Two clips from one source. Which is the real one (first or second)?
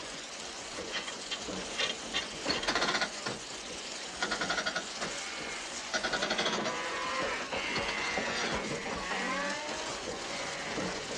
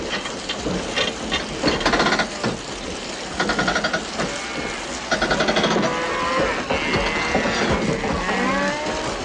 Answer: second